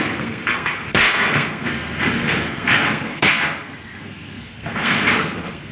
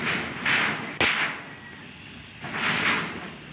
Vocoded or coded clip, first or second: first